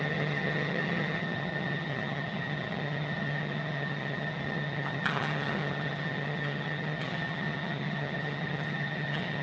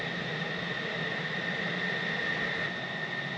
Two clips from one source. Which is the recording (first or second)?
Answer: second